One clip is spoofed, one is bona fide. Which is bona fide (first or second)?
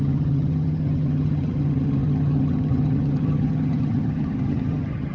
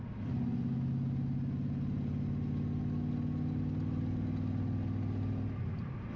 second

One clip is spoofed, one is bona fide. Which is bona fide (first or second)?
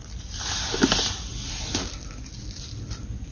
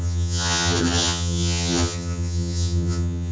first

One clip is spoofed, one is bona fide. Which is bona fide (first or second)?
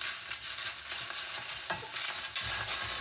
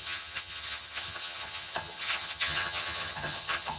first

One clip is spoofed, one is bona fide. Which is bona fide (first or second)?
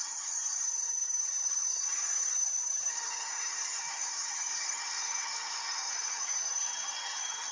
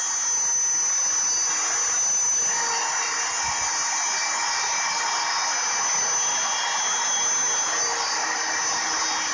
second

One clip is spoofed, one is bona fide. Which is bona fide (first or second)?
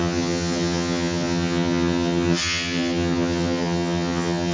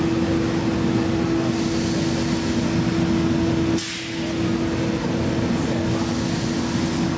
second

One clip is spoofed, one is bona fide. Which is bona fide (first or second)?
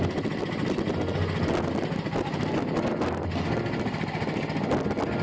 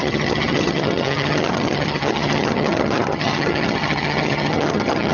first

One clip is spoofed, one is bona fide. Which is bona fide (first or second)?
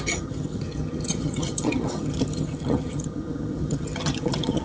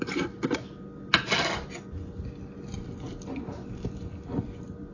second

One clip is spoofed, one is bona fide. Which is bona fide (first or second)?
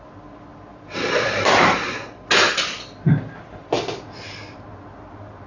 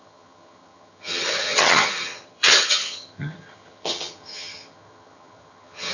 first